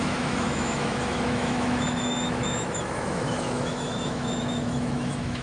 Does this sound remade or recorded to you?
remade